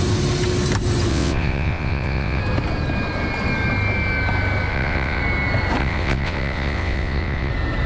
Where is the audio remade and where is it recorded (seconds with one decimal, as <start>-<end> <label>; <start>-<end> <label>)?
0.0-1.1 recorded; 1.1-2.4 remade; 2.4-4.7 recorded; 4.7-5.2 remade; 5.2-5.8 recorded; 5.8-7.5 remade; 7.5-7.9 recorded